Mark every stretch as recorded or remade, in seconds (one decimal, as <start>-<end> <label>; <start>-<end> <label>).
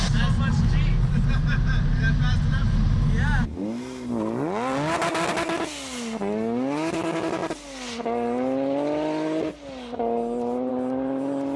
0.0-11.6 recorded